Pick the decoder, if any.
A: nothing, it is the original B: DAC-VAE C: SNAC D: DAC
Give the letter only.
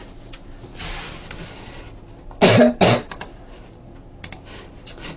A